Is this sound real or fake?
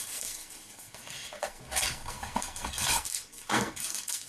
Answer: fake